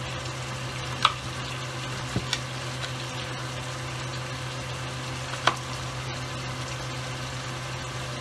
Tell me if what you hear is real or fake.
real